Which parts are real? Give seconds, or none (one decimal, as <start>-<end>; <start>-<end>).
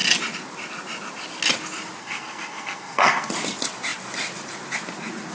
0.0-2.0; 3.3-5.3